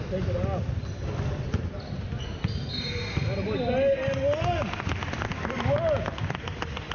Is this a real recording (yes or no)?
yes